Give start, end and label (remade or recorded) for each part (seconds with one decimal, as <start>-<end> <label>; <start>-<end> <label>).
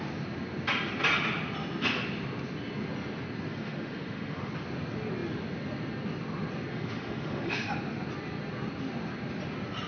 0.0-3.5 recorded; 3.5-4.5 remade; 4.5-6.7 recorded; 6.7-7.7 remade; 7.7-9.9 recorded